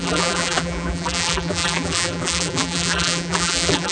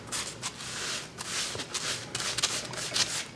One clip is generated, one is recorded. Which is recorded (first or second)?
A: second